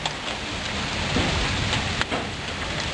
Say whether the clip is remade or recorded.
recorded